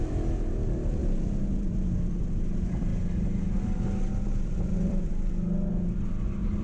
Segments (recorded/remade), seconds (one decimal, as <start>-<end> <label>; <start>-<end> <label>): 0.0-2.9 remade; 2.9-4.1 recorded; 4.1-5.1 remade; 5.1-6.6 recorded